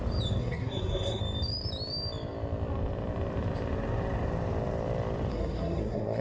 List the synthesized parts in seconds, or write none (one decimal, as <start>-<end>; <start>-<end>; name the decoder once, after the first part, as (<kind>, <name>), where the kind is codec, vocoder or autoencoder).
0.4-1.2 (codec, SNAC); 5.3-6.2